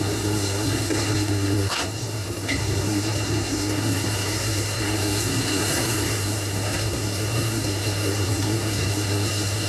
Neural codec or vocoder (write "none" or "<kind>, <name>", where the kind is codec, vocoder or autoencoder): codec, SNAC